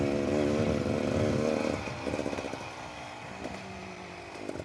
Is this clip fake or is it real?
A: real